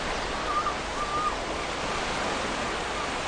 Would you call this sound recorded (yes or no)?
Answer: yes